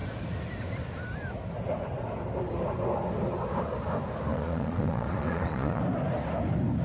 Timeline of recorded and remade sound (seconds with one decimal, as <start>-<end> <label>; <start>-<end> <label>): 0.0-4.3 recorded; 4.3-5.8 remade; 5.8-6.8 recorded